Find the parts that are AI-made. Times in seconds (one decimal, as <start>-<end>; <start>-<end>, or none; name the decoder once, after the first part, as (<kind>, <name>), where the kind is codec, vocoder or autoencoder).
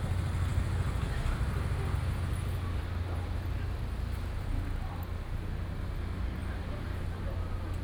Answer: none